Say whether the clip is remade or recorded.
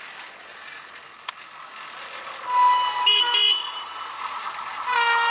recorded